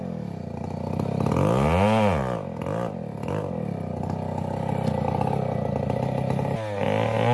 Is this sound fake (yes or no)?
no